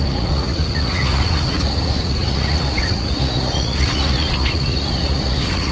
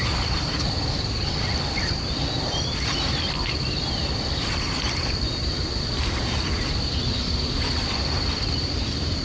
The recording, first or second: second